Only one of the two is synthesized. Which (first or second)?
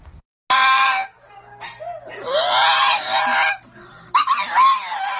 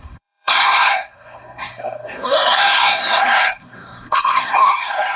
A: second